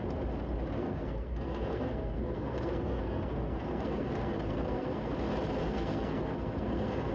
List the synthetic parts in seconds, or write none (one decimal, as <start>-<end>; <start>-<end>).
0.8-5.1; 5.6-7.1